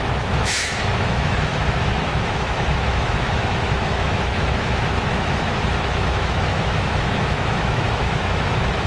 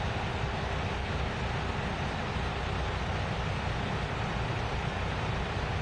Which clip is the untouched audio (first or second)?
second